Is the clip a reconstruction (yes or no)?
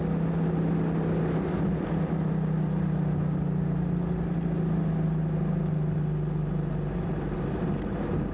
no